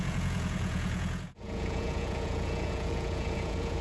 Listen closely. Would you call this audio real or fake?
fake